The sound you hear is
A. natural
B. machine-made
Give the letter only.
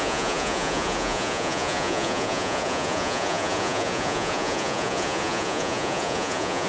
B